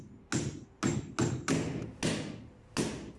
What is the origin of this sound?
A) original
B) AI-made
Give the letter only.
A